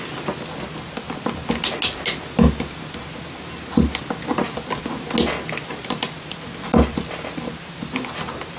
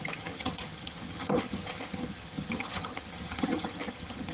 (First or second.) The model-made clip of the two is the second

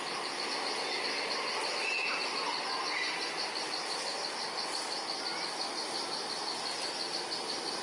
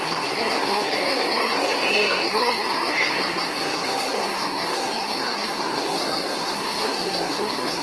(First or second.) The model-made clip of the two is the second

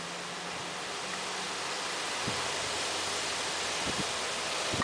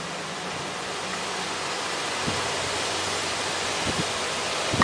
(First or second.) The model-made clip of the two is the second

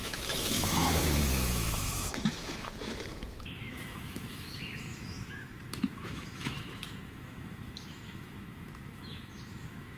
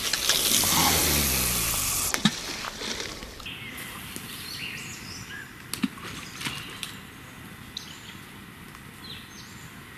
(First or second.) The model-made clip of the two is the first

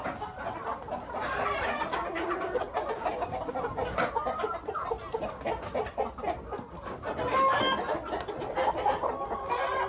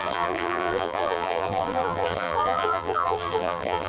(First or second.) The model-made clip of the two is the second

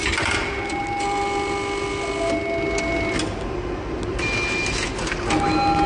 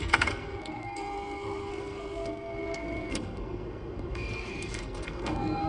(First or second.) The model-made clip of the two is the second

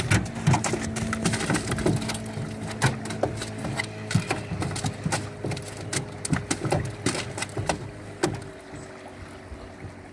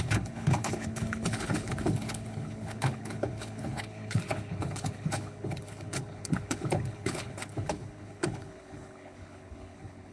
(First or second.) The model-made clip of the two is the second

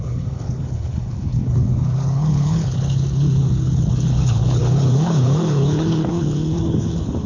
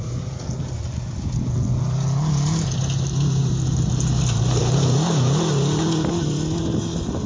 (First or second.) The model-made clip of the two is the first